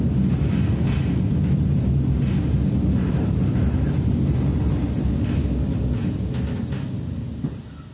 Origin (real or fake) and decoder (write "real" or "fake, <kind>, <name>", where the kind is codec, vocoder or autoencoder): real